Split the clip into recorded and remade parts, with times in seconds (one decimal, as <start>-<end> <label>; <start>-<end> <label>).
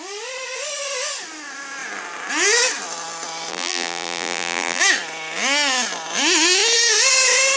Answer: 0.0-3.5 recorded; 3.5-4.8 remade; 4.8-7.6 recorded